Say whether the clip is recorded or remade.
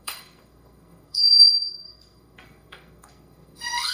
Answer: remade